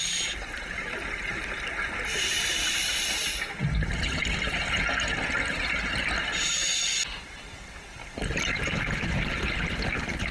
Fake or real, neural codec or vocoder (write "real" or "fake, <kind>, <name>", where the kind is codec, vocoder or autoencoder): real